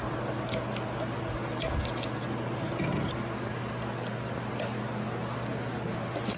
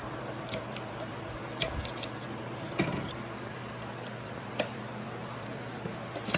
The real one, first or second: first